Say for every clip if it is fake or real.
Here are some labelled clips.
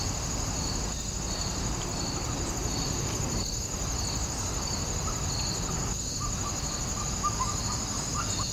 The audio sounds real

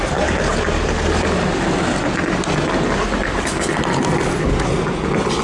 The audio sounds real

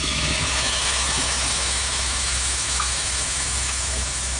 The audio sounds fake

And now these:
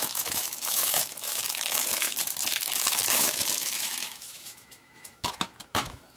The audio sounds fake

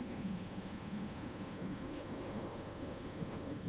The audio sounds fake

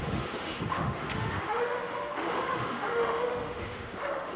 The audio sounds fake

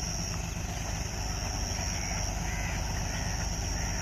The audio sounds real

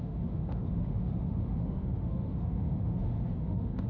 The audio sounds fake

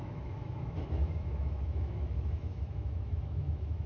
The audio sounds fake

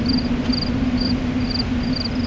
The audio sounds real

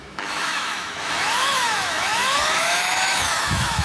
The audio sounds fake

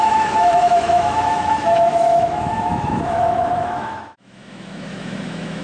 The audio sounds fake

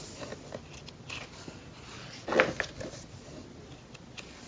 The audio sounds real